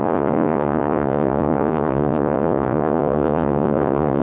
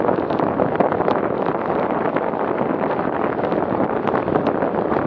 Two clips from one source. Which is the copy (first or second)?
first